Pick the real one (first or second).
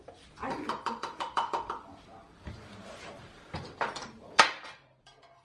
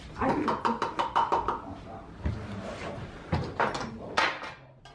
second